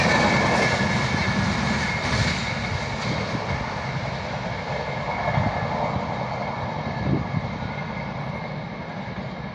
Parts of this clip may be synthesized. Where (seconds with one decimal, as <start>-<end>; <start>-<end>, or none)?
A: 6.4-8.2

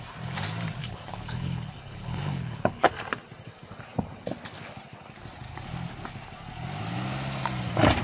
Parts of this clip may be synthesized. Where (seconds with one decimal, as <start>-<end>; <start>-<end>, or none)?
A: 0.8-2.9